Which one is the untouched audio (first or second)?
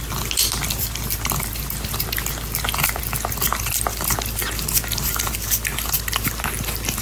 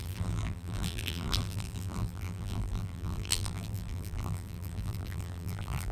first